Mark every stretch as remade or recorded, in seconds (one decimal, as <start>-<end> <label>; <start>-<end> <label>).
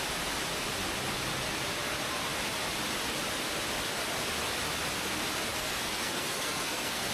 0.0-5.5 recorded; 5.5-7.1 remade